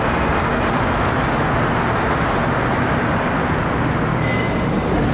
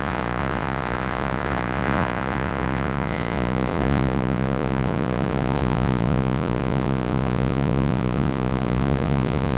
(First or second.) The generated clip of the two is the second